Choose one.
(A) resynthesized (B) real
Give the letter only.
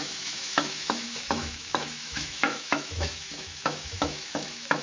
A